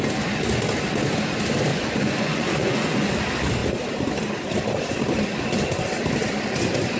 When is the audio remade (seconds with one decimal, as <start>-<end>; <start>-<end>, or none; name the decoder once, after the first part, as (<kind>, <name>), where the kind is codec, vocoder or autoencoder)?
1.7-3.1 (vocoder, Vocos)